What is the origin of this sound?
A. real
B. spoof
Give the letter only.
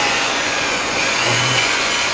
B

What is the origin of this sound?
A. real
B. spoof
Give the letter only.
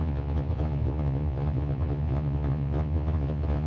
B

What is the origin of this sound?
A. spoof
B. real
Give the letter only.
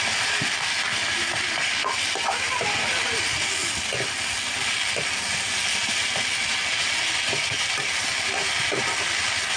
B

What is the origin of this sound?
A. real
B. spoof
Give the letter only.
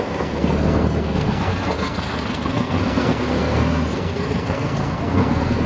B